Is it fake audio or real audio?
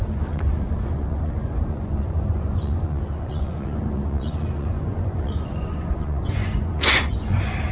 fake